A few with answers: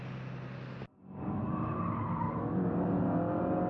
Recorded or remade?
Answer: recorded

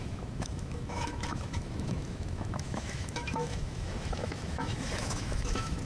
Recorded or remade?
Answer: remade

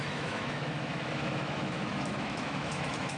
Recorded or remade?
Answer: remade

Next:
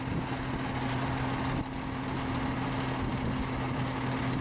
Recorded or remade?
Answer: recorded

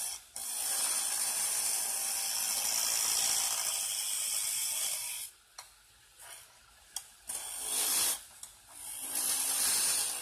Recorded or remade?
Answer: recorded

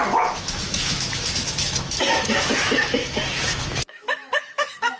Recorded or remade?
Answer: remade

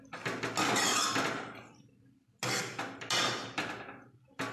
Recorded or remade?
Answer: recorded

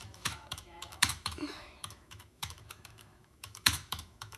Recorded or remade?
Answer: remade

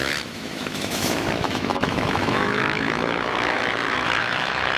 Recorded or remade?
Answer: remade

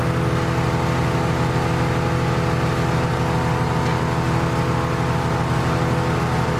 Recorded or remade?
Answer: recorded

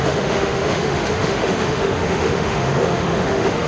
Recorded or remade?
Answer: remade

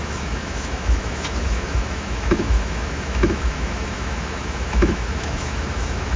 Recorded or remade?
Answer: remade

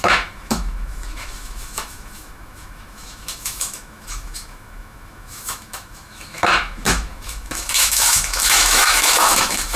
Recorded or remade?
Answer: remade